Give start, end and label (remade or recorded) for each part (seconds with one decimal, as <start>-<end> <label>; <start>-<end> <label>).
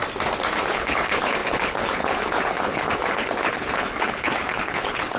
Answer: 0.0-0.7 recorded; 0.7-5.2 remade